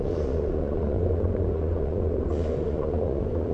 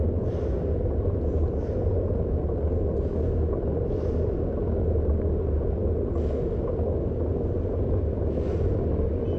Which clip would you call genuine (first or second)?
second